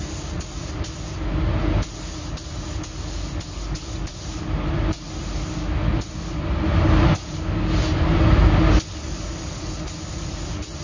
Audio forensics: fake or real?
real